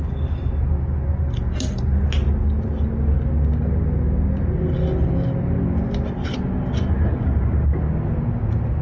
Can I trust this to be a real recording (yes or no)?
yes